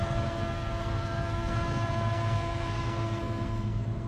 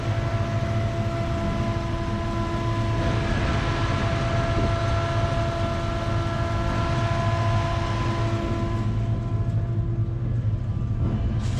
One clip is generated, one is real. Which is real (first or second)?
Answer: second